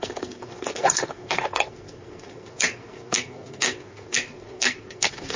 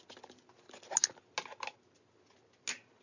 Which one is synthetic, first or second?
first